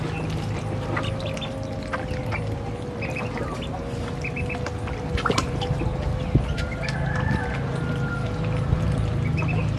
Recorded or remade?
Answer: recorded